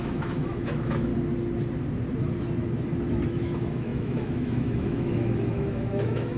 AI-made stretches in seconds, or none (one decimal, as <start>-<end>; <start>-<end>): 0.0-1.1; 3.3-6.4